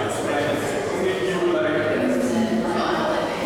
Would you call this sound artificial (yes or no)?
no